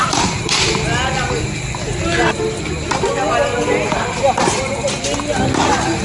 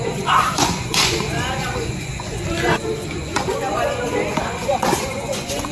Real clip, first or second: first